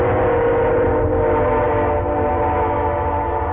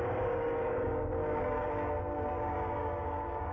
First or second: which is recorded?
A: first